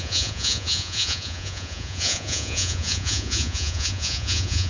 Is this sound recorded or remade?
remade